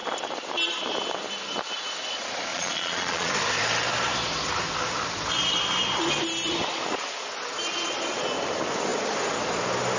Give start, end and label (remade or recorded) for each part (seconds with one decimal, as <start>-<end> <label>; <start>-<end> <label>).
0.0-2.5 recorded; 2.5-3.3 remade; 3.3-10.0 recorded